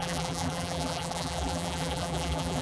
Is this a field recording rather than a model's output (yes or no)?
no